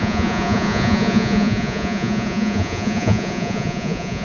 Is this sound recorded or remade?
remade